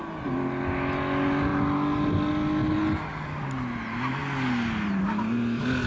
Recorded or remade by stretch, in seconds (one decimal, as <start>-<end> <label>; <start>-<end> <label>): 0.0-5.9 recorded